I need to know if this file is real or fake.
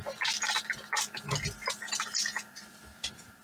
real